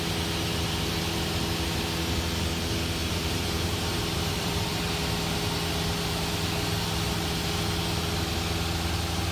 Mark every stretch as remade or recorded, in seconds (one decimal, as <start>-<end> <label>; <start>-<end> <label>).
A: 0.0-3.0 recorded; 3.0-5.0 remade; 5.0-9.3 recorded